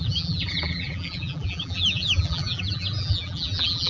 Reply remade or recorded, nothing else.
remade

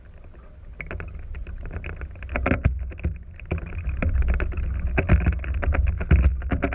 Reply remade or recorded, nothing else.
recorded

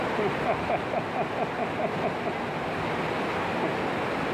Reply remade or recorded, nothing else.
recorded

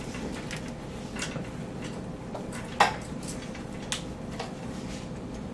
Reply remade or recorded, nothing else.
recorded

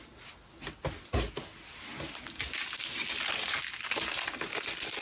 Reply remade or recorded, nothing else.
recorded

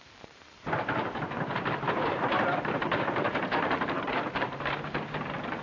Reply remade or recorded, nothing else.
remade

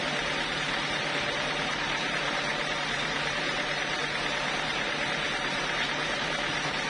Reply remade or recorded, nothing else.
remade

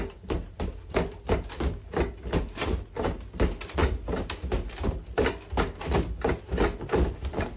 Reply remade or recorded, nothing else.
recorded